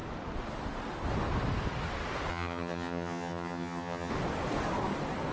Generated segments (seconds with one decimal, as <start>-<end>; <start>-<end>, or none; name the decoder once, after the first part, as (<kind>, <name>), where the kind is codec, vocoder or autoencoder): 2.3-4.1 (vocoder, HiFi-GAN)